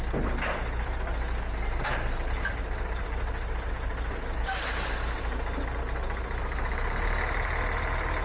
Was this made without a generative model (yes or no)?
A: yes